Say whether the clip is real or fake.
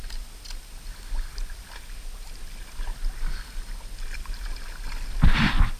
real